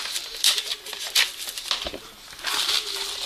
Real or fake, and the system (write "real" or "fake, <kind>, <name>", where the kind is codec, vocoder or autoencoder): real